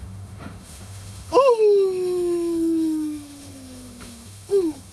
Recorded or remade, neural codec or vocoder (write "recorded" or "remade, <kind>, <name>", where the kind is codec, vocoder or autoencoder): remade, autoencoder, DAC-VAE